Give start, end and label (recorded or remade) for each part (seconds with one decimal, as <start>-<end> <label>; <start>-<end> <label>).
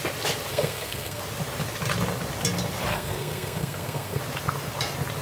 0.0-0.5 recorded; 0.5-1.2 remade; 1.2-2.9 recorded; 2.9-4.2 remade; 4.2-5.2 recorded